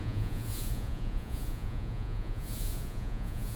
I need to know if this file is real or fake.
fake